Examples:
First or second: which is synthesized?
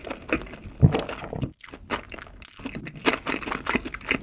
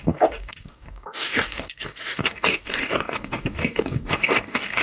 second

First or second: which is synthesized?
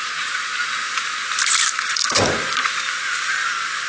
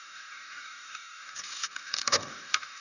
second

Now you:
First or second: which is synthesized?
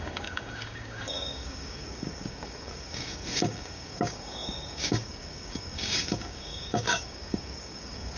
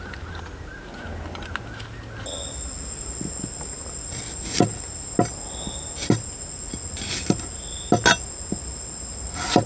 first